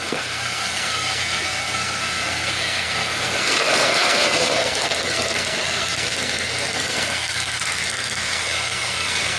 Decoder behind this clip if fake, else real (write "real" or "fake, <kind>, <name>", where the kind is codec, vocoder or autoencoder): fake, codec, SNAC